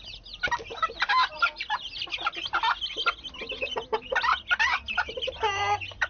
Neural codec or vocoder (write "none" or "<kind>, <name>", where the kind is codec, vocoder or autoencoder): none